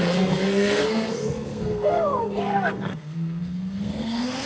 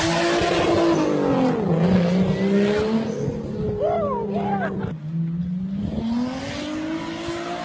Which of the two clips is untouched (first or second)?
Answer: second